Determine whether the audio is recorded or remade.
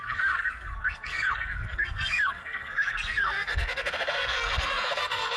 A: remade